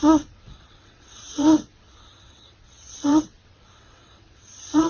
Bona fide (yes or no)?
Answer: no